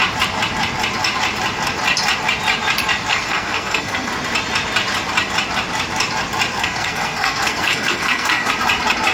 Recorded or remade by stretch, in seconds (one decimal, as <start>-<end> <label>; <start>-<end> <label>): 0.0-3.1 recorded; 3.1-4.1 remade; 4.1-6.5 recorded; 6.5-8.5 remade; 8.5-9.1 recorded